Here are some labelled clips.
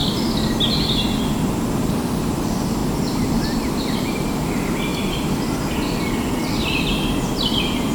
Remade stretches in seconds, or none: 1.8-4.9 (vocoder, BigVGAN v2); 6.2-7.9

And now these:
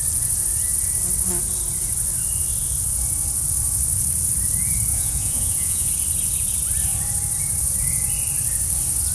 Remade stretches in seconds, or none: 4.9-5.9 (vocoder, Vocos)

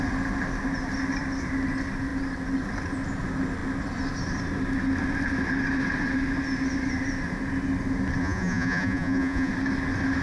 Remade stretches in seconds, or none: 8.2-9.5 (vocoder, Vocos)

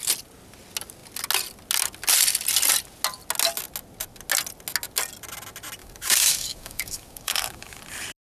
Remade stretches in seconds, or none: 5.8-7.8 (codec, DAC)

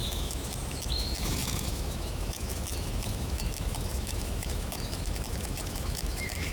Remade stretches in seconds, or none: 0.0-6.5 (autoencoder, DAC-VAE)

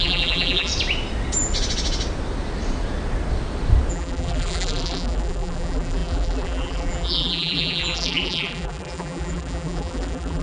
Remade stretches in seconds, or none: 0.0-0.7 (vocoder, BigVGAN v2); 3.9-10.4